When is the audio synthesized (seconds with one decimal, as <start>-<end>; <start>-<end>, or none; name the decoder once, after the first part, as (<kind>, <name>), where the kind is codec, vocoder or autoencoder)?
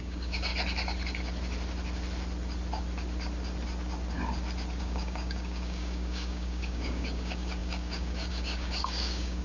0.0-0.5 (codec, DAC); 4.8-9.4